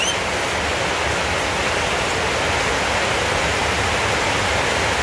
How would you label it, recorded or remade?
recorded